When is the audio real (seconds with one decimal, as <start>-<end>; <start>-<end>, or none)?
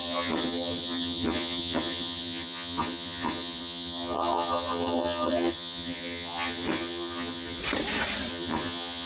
7.6-8.3